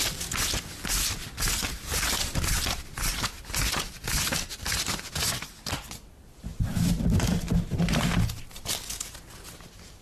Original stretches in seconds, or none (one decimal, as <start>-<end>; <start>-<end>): 0.0-10.0